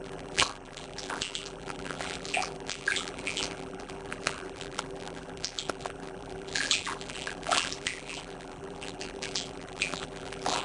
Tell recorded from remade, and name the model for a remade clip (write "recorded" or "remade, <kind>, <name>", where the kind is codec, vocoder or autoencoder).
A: remade, vocoder, BigVGAN v2